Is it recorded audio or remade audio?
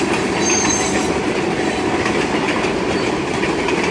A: recorded